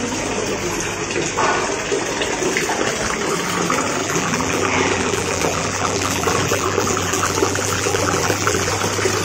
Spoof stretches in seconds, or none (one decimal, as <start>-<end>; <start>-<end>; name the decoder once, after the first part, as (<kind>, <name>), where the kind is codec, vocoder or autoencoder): 4.0-8.7 (vocoder, BigVGAN v2)